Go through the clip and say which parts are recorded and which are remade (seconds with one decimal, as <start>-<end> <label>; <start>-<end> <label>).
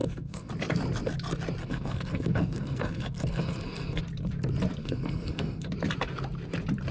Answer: 0.0-0.5 remade; 0.5-1.6 recorded; 1.6-4.0 remade; 4.0-4.8 recorded; 4.8-5.7 remade; 5.7-6.9 recorded